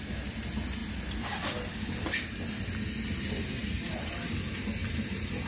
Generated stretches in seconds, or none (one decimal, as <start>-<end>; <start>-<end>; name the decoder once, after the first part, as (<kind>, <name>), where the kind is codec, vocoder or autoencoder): 3.6-4.3 (vocoder, BigVGAN v2); 4.8-5.5